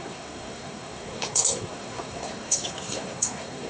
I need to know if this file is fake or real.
fake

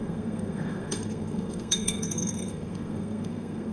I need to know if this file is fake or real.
fake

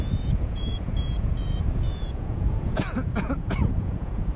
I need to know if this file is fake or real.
fake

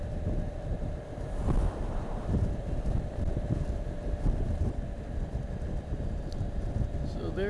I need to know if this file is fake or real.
fake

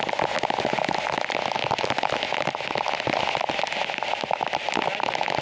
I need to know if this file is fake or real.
real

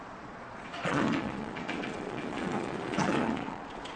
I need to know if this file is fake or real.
fake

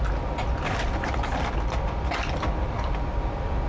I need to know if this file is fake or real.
real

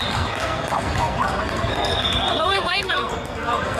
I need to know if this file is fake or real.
fake